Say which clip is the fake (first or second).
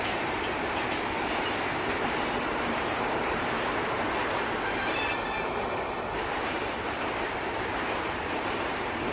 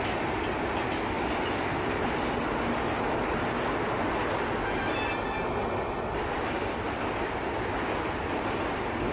first